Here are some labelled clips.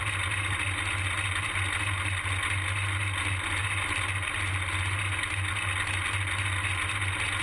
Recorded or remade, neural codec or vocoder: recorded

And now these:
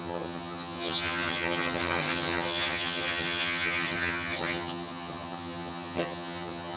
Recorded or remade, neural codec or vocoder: remade, vocoder, HiFi-GAN